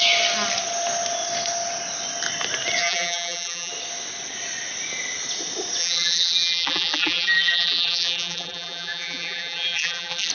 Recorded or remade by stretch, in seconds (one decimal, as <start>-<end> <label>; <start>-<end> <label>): 0.0-2.8 recorded; 2.8-3.7 remade; 3.7-5.8 recorded; 5.8-10.3 remade